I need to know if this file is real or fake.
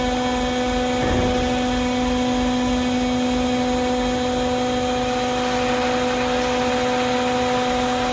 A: real